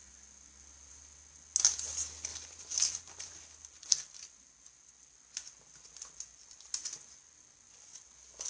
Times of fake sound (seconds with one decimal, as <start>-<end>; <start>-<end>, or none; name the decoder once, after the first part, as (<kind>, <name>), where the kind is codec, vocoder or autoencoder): none